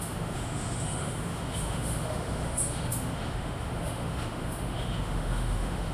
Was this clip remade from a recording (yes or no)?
yes